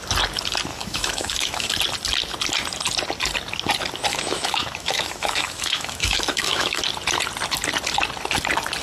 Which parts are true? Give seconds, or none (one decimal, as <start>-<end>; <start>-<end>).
0.0-0.7; 1.7-4.1; 6.8-8.8